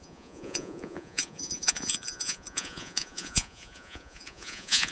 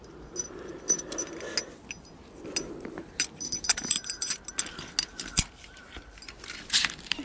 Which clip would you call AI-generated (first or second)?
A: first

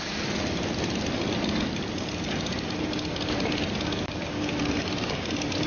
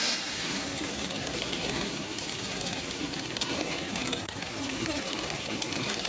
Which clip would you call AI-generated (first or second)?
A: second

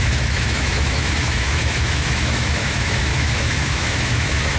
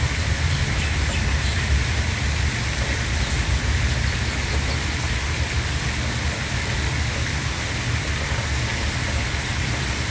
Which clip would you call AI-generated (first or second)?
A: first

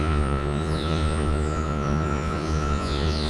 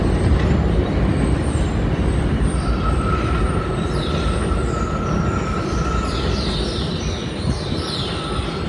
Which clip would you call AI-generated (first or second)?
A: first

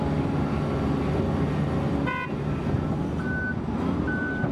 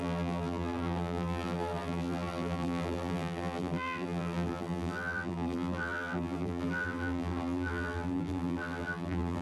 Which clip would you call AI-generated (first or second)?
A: second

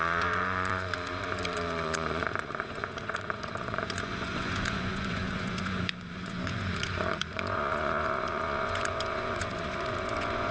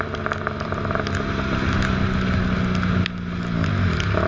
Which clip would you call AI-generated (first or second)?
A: first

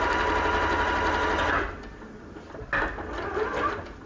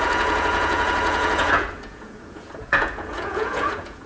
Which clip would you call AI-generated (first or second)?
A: second